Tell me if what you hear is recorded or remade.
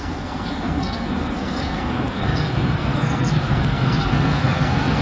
remade